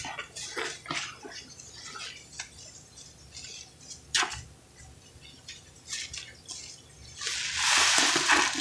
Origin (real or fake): real